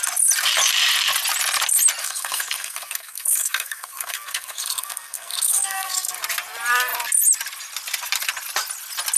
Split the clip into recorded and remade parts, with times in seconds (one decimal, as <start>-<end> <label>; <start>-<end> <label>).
0.0-2.0 recorded; 2.0-6.1 remade; 6.1-9.2 recorded